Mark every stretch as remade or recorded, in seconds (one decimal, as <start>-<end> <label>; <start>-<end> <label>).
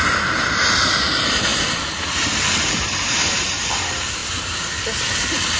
0.0-1.5 recorded; 1.5-3.6 remade; 3.6-5.6 recorded